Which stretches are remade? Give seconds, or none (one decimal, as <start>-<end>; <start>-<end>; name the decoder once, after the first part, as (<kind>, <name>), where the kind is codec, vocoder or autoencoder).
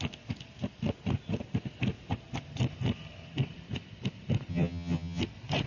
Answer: 4.5-5.2 (vocoder, HiFi-GAN)